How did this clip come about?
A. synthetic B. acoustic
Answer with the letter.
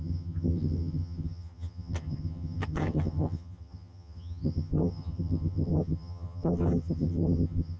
A